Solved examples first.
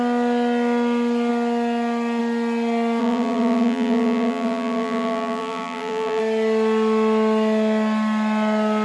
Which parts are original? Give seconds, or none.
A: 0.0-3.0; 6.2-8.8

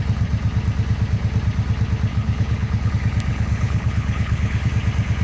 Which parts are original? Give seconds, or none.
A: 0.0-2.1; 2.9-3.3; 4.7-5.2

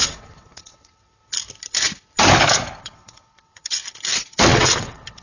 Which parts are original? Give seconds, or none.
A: 1.2-2.8; 3.8-4.3